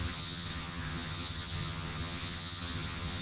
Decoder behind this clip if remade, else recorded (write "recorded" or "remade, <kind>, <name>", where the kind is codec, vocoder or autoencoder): remade, vocoder, HiFi-GAN